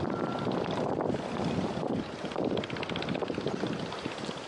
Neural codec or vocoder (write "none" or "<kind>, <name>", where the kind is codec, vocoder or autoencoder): none